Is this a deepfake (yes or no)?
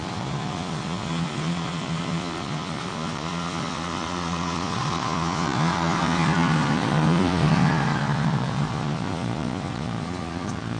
yes